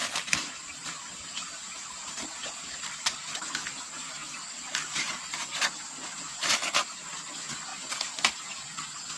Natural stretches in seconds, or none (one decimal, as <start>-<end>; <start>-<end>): 3.4-9.2